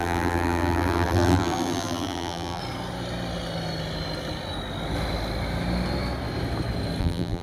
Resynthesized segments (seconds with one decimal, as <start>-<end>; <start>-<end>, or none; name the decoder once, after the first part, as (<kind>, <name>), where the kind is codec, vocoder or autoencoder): 0.0-2.6 (vocoder, BigVGAN v2); 7.0-7.4